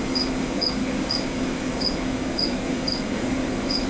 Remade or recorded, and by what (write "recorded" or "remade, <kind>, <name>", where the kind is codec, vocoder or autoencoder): remade, codec, DAC